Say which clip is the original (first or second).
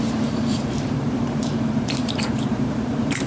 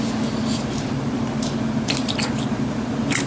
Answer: second